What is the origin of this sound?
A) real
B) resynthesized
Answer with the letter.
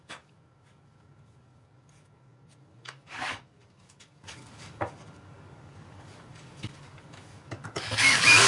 B